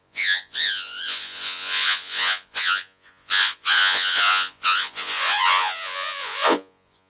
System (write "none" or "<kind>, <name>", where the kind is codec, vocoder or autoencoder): vocoder, Vocos